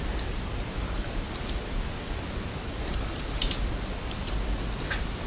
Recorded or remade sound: recorded